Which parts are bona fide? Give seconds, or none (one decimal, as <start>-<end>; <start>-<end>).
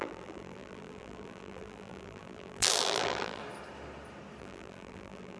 3.4-4.4